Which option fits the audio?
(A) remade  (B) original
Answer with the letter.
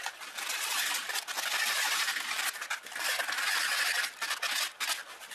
B